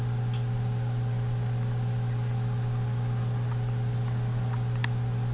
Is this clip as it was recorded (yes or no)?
yes